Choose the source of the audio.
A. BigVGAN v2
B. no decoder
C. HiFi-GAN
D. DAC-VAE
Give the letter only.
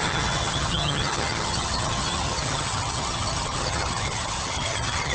C